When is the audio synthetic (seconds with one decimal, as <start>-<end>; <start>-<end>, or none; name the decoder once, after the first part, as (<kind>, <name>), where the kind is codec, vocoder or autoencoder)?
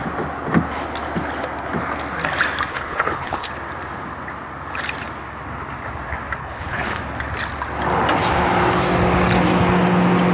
2.7-3.5 (codec, HILCodec); 6.4-7.0